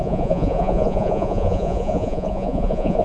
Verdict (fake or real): fake